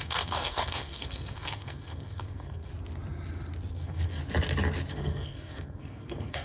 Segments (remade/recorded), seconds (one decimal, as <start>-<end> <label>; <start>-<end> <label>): 0.0-2.7 remade; 2.7-3.7 recorded; 3.7-4.2 remade; 4.2-4.9 recorded; 4.9-6.4 remade